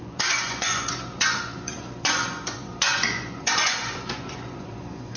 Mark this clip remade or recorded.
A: remade